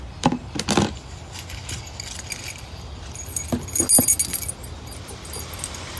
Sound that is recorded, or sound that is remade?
recorded